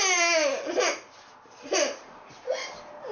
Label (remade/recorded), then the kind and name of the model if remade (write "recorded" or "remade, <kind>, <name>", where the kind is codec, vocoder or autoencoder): recorded